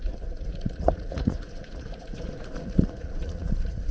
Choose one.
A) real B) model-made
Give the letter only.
B